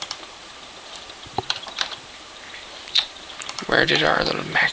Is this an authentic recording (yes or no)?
no